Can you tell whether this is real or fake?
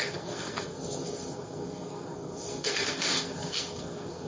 fake